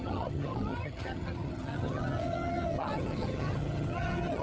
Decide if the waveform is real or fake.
fake